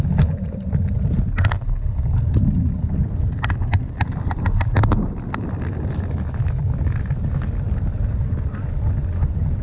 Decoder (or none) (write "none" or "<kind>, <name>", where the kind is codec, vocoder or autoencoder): none